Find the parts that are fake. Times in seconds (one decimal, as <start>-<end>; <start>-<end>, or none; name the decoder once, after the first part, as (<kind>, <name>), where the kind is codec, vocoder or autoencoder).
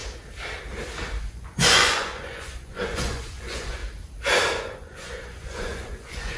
1.2-3.8 (vocoder, Vocos); 4.6-6.4